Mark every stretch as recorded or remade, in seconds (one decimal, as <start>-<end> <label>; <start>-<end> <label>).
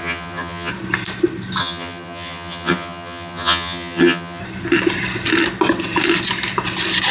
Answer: 0.0-0.7 remade; 0.7-1.6 recorded; 1.6-4.4 remade; 4.4-7.1 recorded